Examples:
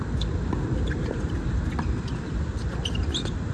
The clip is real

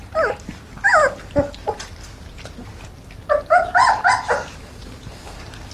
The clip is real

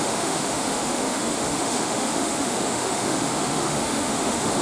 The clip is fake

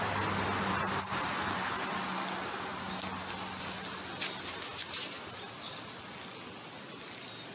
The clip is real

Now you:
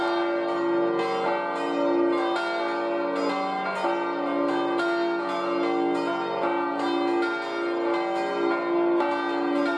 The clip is real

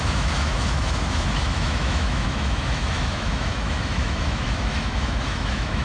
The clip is fake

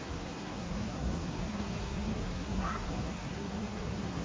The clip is fake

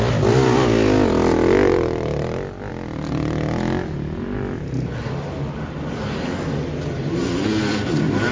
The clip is real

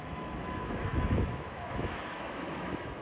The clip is fake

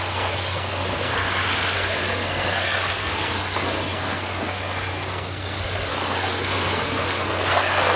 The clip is fake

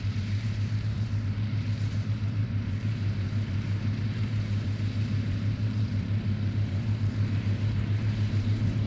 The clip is fake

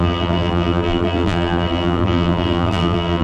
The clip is fake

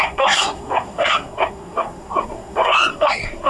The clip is fake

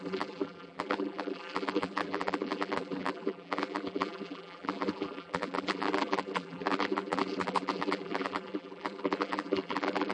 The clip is fake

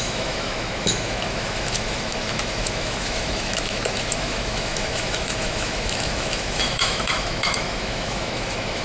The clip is fake